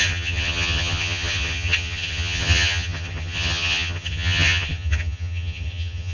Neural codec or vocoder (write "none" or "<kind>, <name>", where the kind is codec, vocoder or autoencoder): vocoder, HiFi-GAN